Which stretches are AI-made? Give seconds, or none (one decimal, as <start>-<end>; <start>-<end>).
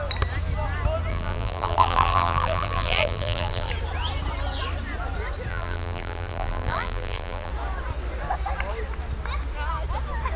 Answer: 1.1-3.7; 5.5-7.5